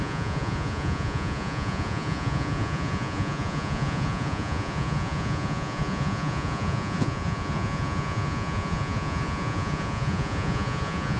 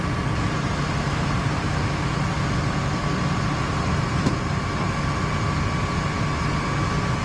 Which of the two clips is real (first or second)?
second